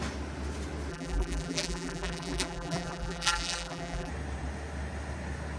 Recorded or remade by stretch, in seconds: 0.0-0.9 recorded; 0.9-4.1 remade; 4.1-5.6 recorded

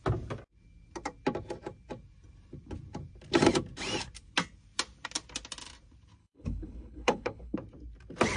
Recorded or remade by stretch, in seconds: 0.0-6.2 recorded; 6.2-7.6 remade; 7.6-8.4 recorded

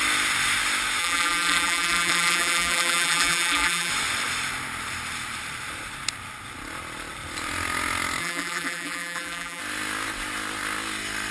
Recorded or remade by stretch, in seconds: 0.0-1.0 recorded; 1.0-3.9 remade; 3.9-8.2 recorded; 8.2-9.6 remade; 9.6-11.3 recorded

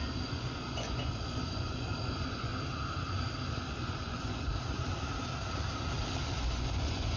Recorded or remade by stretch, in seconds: 0.0-2.5 remade; 2.5-3.8 recorded; 3.8-4.5 remade; 4.5-6.4 recorded; 6.4-7.2 remade

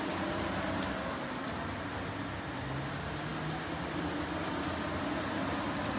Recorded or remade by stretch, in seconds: 0.0-6.0 recorded

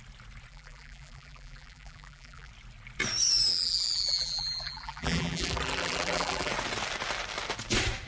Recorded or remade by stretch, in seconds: 0.0-0.5 recorded; 0.5-2.5 remade; 2.5-3.5 recorded; 3.5-6.5 remade; 6.5-8.1 recorded

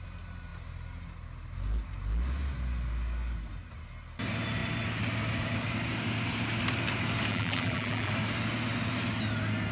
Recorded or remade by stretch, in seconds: 0.0-7.3 recorded; 7.3-8.1 remade; 8.1-9.7 recorded